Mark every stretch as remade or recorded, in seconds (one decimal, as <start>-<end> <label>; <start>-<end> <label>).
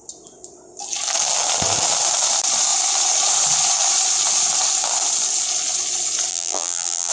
0.0-6.3 recorded; 6.3-7.1 remade